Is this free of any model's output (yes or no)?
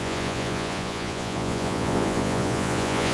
no